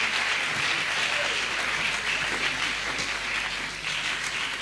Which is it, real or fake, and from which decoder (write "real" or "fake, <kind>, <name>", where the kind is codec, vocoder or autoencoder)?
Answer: real